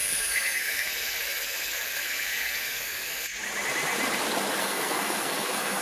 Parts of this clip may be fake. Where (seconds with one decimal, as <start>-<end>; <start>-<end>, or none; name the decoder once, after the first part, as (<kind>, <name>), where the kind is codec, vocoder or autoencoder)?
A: 0.0-3.3 (codec, SNAC); 4.6-5.8